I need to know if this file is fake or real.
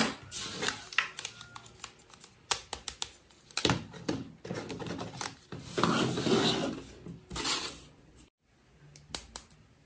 real